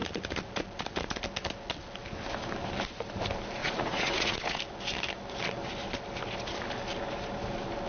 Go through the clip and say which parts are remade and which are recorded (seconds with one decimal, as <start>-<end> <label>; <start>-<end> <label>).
0.0-3.6 recorded; 3.6-4.6 remade; 4.6-7.9 recorded